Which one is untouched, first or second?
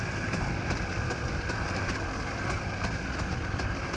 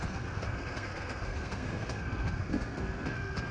first